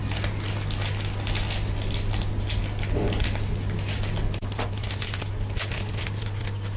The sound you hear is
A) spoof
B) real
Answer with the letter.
B